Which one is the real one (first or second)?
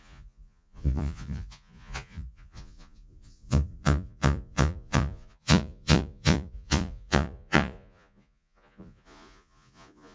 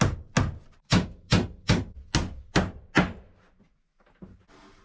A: second